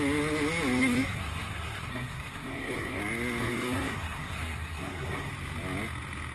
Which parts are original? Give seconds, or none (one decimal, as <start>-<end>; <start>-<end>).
0.0-0.8; 3.0-3.4; 5.3-6.3